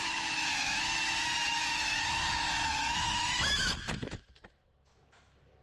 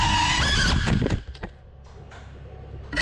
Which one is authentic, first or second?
second